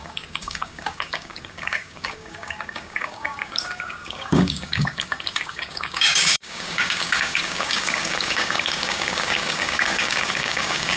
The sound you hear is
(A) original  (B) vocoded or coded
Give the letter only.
B